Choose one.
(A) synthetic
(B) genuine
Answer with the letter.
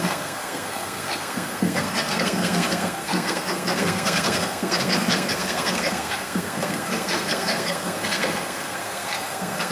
A